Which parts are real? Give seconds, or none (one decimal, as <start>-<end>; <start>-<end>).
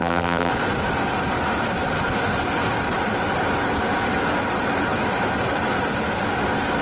0.5-6.8